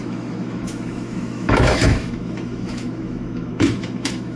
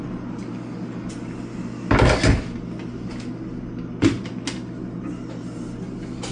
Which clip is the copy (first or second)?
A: first